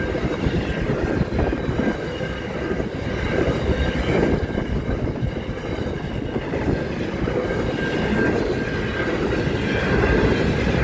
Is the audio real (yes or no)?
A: yes